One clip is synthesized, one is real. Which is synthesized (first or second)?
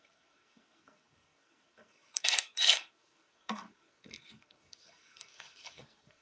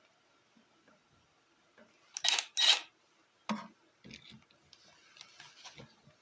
first